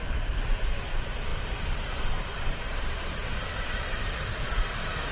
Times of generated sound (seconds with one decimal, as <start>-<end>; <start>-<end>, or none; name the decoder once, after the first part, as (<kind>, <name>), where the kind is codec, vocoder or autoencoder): 1.3-3.6 (vocoder, BigVGAN v2)